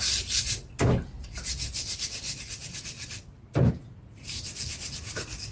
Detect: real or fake real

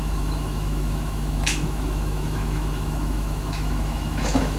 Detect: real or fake fake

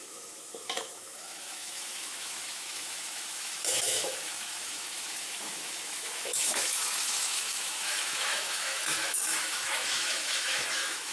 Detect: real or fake fake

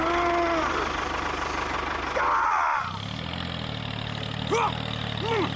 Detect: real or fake real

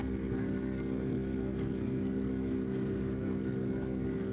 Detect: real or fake fake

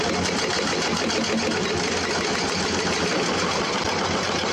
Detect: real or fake real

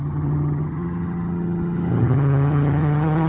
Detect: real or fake fake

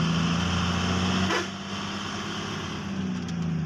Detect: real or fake real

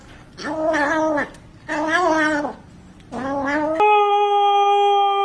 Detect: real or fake real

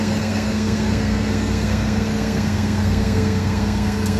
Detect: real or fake fake